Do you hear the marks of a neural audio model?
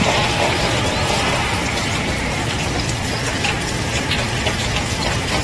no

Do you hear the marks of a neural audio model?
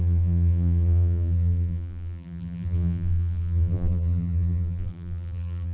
yes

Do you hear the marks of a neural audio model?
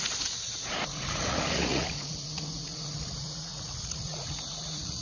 yes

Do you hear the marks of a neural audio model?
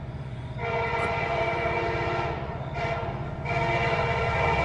yes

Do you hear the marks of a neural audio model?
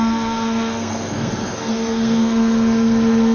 yes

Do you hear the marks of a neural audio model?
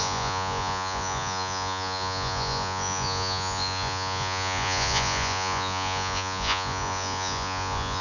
yes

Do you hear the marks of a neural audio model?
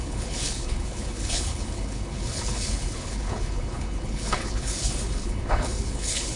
yes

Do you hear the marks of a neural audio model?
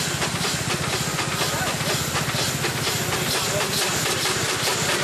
yes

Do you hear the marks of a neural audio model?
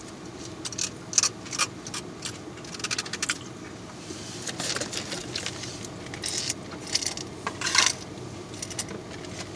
no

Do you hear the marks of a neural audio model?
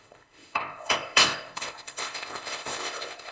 yes